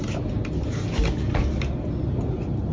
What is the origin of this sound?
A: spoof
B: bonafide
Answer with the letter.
B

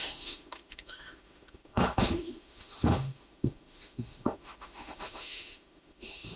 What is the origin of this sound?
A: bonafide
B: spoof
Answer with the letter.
B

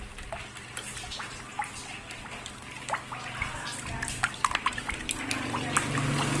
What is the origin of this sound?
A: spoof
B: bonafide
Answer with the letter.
B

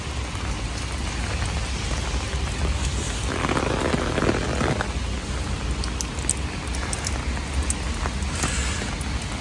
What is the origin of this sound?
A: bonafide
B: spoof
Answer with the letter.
A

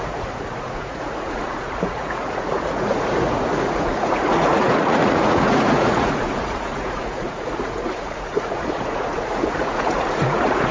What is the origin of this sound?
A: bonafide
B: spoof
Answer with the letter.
B